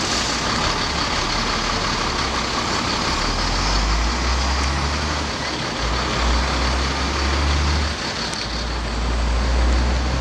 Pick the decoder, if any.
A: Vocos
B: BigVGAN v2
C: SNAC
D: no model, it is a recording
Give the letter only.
D